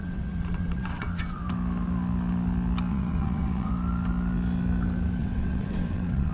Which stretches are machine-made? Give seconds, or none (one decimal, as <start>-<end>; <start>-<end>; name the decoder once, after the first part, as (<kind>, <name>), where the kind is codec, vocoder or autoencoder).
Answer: 0.0-1.4 (vocoder, WaveNeXt); 2.9-3.7; 5.2-6.3